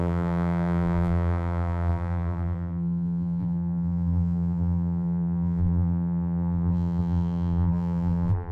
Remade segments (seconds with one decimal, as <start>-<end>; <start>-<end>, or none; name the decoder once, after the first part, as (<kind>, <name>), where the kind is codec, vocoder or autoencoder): 0.0-8.5 (vocoder, BigVGAN v2)